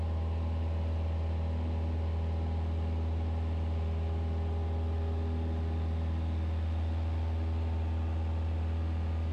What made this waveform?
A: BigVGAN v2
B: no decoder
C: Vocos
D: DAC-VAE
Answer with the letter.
B